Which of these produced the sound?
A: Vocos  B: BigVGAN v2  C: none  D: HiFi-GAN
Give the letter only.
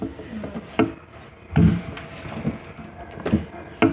C